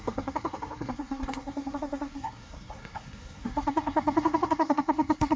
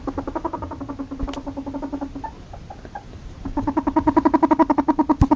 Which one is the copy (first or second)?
first